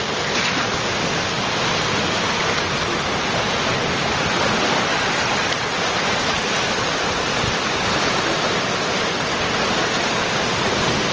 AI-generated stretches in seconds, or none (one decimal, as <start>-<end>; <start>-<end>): none

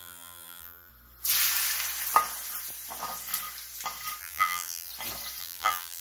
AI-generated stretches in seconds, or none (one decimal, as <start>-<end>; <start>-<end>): 0.0-0.9; 4.2-4.9; 5.4-6.0

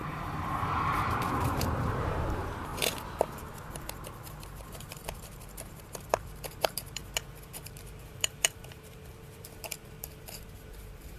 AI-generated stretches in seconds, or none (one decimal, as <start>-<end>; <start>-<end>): 0.0-2.7; 3.8-7.0; 7.5-11.2

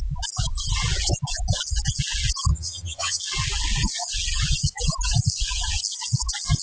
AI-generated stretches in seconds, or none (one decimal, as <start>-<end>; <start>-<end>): 2.5-3.2

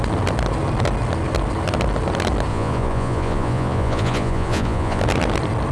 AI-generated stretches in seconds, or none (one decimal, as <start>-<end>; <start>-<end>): 2.5-5.0

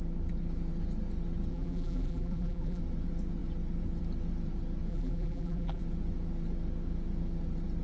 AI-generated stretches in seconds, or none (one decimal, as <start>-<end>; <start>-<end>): 1.5-2.8; 4.9-5.8

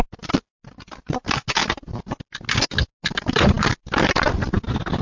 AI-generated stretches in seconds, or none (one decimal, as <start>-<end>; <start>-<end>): none